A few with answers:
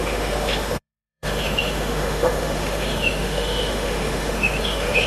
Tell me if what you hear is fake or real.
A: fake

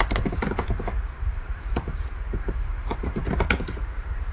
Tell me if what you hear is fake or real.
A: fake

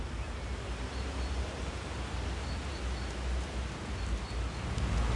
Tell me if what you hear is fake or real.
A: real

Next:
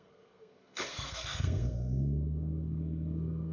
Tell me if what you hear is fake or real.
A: fake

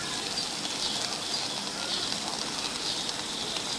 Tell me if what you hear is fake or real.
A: real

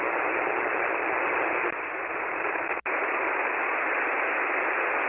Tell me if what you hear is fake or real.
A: fake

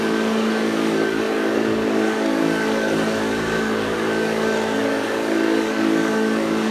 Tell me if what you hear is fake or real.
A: fake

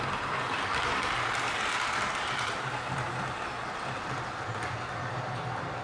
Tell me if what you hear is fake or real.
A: real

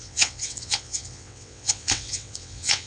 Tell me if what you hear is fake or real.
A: fake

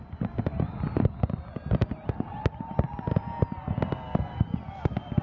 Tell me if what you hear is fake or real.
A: real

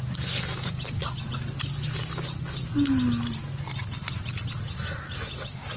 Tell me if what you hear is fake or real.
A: real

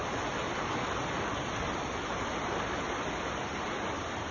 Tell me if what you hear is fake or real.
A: real